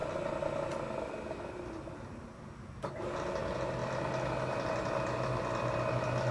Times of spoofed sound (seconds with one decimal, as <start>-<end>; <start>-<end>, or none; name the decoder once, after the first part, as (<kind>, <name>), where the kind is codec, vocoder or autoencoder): none